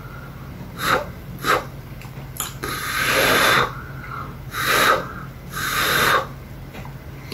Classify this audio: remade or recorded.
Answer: recorded